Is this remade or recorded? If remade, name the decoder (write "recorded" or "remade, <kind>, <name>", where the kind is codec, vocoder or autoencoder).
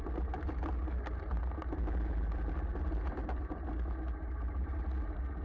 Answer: recorded